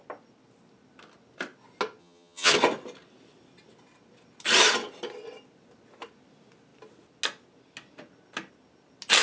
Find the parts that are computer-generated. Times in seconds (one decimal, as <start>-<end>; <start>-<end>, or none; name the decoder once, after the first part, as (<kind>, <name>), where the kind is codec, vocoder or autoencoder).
2.0-2.5 (vocoder, HiFi-GAN)